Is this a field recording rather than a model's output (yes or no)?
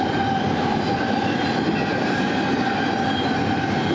yes